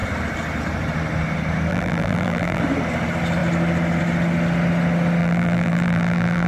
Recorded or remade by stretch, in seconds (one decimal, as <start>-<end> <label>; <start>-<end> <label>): 0.0-1.7 recorded; 1.7-2.6 remade; 2.6-5.2 recorded; 5.2-6.5 remade